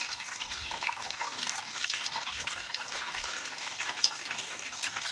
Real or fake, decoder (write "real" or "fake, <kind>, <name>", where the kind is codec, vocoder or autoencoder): fake, codec, DAC